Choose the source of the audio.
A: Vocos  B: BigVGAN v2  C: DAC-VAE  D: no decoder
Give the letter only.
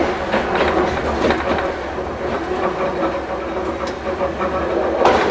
D